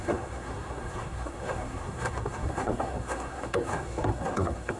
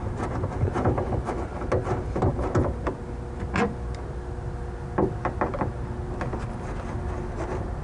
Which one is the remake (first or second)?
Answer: first